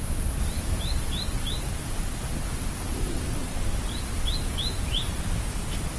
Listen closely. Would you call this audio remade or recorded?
recorded